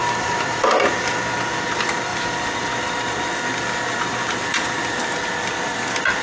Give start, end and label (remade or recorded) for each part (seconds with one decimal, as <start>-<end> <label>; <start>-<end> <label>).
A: 0.0-1.2 remade; 1.2-6.2 recorded